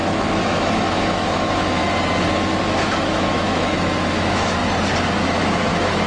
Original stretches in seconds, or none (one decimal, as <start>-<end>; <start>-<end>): 1.8-2.6; 4.6-5.4

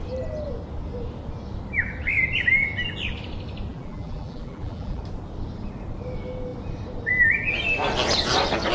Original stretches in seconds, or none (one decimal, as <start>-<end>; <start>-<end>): 0.0-3.7; 5.0-8.7

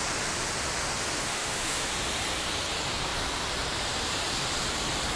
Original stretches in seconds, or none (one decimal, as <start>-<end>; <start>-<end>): 0.0-1.3; 1.9-5.2

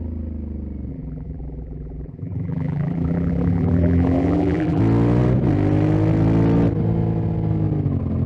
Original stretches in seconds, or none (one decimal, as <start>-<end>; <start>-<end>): 0.0-0.9; 4.8-8.3

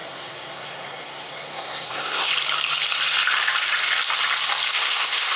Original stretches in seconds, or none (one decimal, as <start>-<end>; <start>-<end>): 2.3-4.7

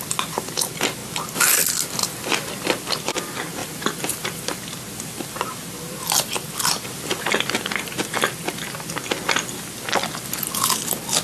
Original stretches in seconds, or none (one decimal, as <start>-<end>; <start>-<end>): 0.0-2.0; 2.5-3.6; 4.4-11.2